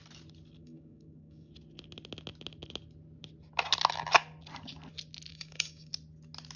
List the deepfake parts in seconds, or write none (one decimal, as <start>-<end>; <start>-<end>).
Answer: 0.6-1.5; 5.3-5.9